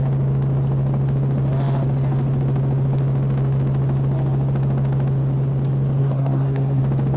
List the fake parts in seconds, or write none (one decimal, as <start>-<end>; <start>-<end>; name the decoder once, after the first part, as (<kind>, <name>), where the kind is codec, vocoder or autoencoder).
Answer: 6.0-6.8 (codec, SNAC)